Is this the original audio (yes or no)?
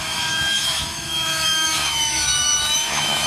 no